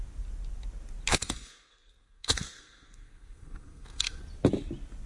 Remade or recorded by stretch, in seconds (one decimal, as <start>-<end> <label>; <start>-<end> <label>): 0.0-1.1 recorded; 1.1-4.2 remade; 4.2-5.1 recorded